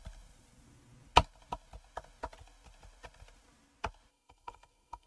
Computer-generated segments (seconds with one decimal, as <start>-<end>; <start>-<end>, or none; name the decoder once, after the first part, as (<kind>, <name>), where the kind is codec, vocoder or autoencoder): 4.1-5.1 (codec, SNAC)